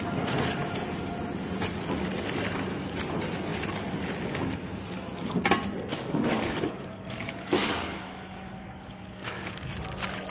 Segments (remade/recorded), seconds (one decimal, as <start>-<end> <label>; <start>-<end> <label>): 0.0-5.9 recorded; 5.9-9.7 remade; 9.7-10.3 recorded